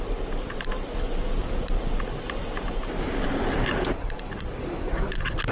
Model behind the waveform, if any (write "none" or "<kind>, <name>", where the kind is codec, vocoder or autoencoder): none